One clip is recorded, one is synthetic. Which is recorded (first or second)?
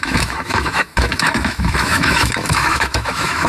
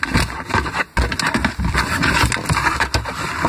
second